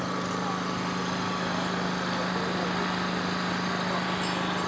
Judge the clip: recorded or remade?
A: recorded